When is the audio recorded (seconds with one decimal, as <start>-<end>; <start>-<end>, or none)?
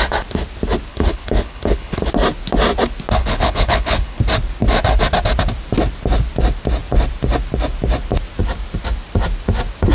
0.0-0.9; 2.1-3.2; 4.2-9.9